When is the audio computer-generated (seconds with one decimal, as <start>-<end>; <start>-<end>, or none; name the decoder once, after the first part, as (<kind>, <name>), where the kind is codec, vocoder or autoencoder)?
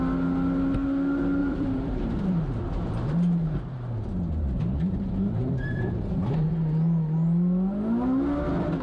1.4-6.5 (vocoder, BigVGAN v2)